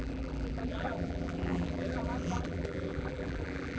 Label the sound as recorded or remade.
remade